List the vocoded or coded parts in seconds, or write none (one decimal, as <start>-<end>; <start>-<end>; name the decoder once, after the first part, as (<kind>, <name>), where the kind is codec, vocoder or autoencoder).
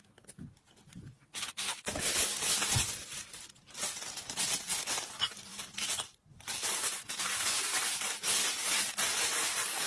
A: none